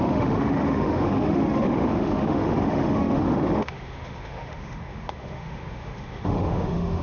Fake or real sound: fake